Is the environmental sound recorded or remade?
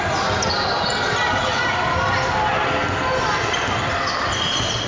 recorded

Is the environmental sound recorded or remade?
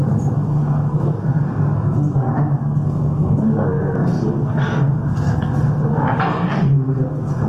remade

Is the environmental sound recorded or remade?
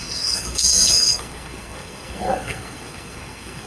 remade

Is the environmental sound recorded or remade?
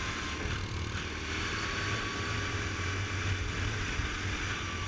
recorded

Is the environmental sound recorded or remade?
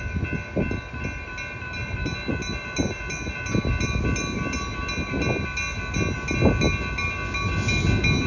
recorded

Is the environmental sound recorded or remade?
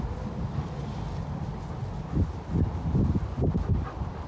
recorded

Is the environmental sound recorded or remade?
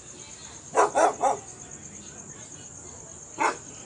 recorded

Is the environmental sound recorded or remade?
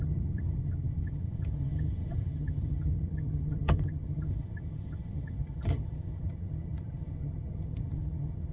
remade